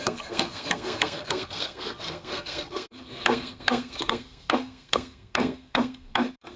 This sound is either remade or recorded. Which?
remade